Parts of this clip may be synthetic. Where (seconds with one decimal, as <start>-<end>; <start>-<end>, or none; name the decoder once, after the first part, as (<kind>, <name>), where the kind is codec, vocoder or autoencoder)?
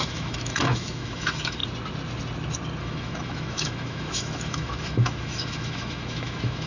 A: 0.0-1.6 (autoencoder, DAC-VAE); 2.8-6.7